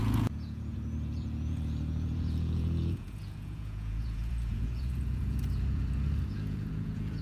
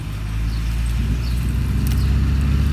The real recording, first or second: second